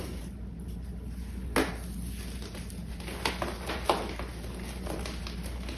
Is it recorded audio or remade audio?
recorded